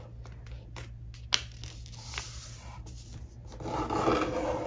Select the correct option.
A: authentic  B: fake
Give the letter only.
A